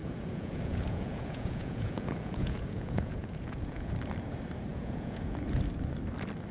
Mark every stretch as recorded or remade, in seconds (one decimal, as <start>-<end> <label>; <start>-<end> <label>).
0.0-3.9 remade; 3.9-4.7 recorded; 4.7-5.4 remade; 5.4-6.5 recorded